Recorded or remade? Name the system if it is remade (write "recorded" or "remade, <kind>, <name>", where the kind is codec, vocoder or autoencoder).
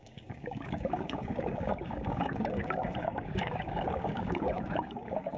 remade, codec, DAC